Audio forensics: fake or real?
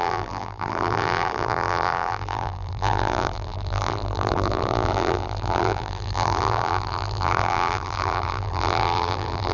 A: fake